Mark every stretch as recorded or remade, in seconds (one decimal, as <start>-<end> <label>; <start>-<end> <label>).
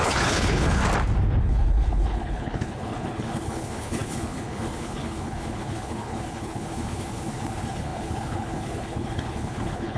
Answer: 0.0-0.8 remade; 0.8-1.4 recorded; 1.4-10.0 remade